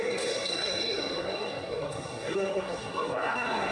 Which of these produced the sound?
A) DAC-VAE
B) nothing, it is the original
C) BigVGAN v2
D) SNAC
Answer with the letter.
D